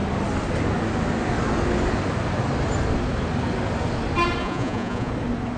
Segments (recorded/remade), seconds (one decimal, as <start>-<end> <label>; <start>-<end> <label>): 0.0-4.4 recorded; 4.4-5.1 remade; 5.1-5.6 recorded